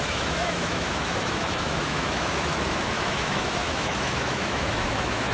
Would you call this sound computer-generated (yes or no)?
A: yes